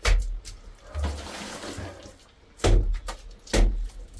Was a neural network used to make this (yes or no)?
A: no